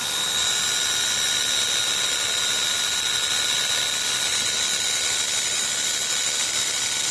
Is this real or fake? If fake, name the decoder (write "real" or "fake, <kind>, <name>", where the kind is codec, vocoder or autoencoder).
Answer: fake, vocoder, BigVGAN v2